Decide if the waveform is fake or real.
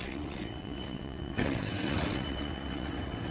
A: fake